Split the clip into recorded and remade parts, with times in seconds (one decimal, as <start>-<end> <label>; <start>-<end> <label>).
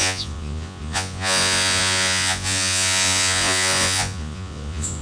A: 0.0-5.0 remade